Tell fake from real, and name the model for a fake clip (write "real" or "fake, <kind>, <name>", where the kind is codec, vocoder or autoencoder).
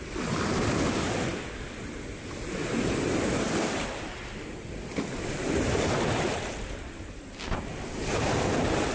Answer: real